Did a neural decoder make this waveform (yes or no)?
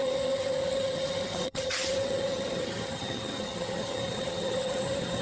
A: yes